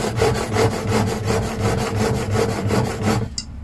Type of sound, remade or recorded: recorded